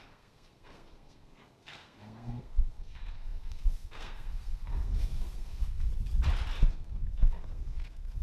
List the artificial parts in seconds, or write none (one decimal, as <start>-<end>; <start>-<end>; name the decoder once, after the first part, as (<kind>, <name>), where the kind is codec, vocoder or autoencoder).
0.0-5.9 (codec, SNAC); 6.7-8.2